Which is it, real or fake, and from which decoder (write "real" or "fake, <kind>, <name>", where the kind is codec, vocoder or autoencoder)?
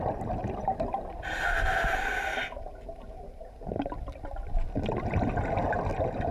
real